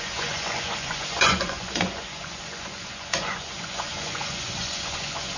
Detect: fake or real fake